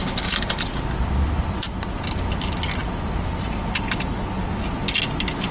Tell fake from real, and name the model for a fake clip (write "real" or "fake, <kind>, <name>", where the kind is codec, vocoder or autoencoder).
real